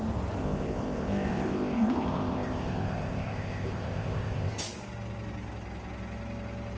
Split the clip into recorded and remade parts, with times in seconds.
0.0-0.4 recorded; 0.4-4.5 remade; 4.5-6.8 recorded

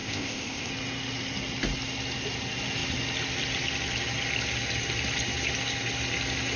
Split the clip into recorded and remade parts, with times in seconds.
0.0-0.7 remade; 0.7-6.6 recorded

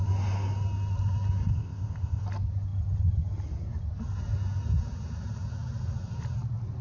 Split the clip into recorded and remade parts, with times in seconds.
0.0-1.5 recorded; 1.5-2.2 remade; 2.2-6.8 recorded